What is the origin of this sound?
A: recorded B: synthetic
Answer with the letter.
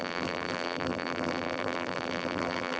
B